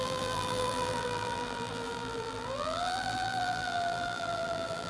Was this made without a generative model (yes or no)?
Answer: no